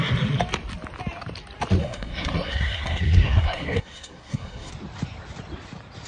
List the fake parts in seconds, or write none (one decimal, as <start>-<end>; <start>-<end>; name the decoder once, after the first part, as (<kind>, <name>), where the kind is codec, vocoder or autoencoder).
1.8-4.7 (codec, SNAC)

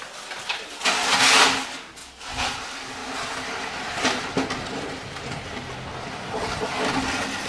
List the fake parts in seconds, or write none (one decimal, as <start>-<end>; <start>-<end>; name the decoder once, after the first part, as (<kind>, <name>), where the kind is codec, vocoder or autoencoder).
none

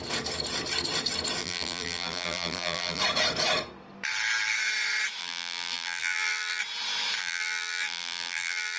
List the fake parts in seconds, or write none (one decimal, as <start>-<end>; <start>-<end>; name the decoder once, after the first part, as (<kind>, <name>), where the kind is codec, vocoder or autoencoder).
1.4-3.0 (vocoder, BigVGAN v2); 5.2-6.6; 7.2-8.8

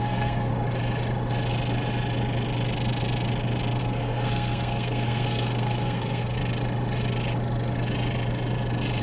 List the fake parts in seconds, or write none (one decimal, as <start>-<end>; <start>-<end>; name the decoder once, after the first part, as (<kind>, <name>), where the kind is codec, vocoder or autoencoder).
0.0-0.5 (codec, SNAC); 3.8-6.4

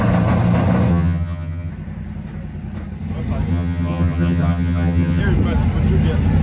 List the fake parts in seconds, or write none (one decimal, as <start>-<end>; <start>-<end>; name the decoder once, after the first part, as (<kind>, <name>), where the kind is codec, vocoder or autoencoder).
0.9-1.7 (vocoder, HiFi-GAN); 3.5-5.2

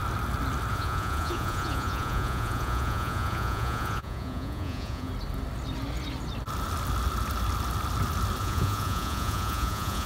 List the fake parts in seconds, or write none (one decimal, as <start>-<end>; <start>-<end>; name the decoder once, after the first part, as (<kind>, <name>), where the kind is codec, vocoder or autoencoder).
0.7-5.1 (vocoder, Vocos); 8.4-10.1